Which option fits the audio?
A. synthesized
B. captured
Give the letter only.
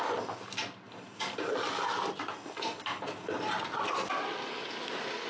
B